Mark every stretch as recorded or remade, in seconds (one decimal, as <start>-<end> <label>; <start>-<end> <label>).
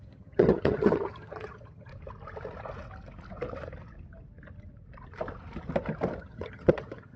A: 0.0-1.9 remade; 1.9-6.2 recorded; 6.2-7.2 remade